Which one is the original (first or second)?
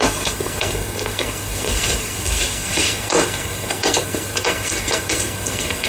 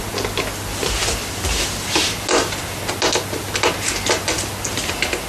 second